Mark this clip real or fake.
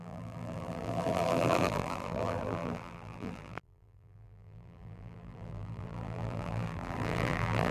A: fake